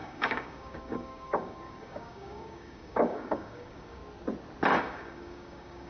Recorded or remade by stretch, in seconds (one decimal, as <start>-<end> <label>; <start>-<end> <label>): 0.0-4.0 remade; 4.0-4.8 recorded; 4.8-5.9 remade